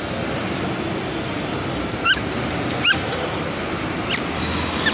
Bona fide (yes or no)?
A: yes